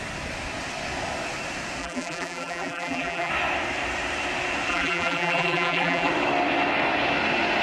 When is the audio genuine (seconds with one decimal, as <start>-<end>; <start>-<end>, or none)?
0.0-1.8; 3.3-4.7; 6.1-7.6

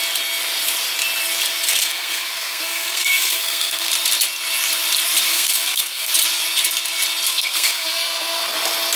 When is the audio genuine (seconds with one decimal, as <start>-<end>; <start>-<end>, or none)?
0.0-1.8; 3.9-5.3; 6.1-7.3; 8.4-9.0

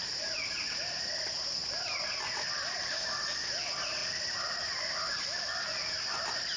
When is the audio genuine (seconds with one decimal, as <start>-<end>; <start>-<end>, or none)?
0.0-1.2; 1.6-2.7